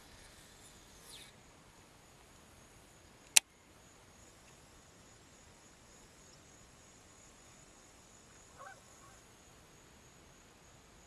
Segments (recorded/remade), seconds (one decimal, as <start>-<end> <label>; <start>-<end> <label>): 0.0-4.2 recorded; 4.2-9.2 remade; 9.2-11.1 recorded